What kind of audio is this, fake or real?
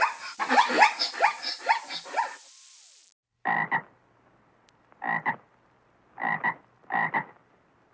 real